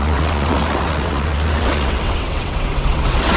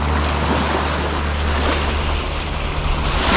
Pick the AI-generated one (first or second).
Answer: first